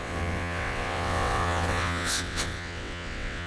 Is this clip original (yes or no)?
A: no